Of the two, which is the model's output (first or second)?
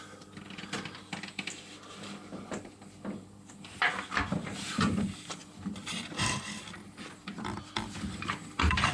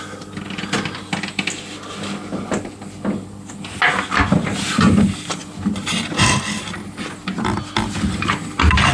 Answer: first